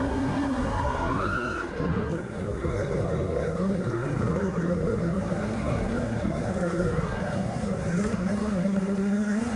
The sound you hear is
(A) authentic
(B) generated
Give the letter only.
B